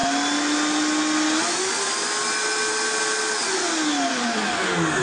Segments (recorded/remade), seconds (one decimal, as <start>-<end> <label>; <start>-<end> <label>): 0.0-3.9 recorded; 3.9-4.6 remade; 4.6-5.0 recorded